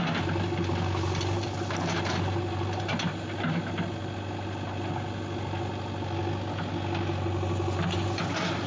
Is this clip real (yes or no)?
yes